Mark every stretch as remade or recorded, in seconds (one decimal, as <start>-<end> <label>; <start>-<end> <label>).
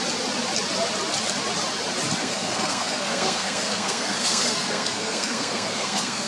0.0-2.2 recorded; 2.2-6.3 remade